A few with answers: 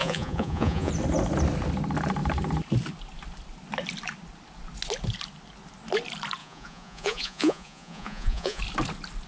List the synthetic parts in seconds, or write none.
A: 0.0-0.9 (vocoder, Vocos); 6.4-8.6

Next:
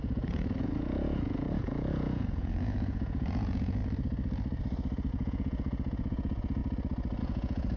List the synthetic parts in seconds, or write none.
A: 0.0-3.8 (vocoder, Vocos); 5.1-6.6; 7.2-7.8